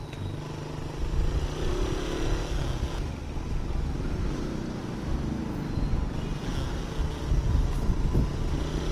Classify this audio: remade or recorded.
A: recorded